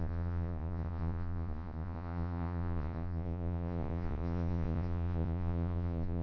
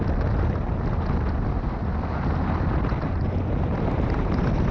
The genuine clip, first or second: second